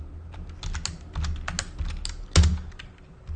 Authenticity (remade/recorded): recorded